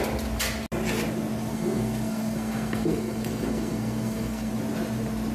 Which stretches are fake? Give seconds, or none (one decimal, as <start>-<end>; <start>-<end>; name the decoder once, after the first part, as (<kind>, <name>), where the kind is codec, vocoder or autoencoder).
1.5-4.5 (codec, SNAC)